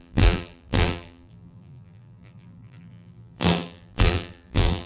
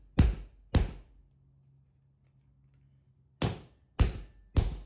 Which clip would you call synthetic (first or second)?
first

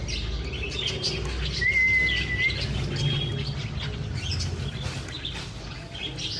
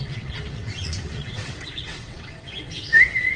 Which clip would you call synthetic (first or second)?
second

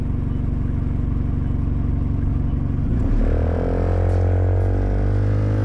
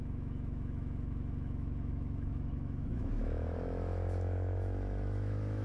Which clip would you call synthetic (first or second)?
second